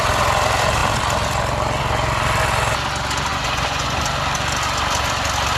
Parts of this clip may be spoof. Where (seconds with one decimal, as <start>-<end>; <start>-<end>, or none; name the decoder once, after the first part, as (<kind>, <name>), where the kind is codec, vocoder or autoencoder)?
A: 3.3-4.1 (vocoder, Vocos)